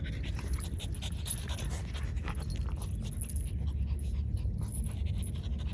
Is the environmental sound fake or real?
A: real